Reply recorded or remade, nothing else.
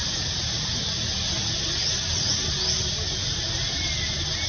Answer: recorded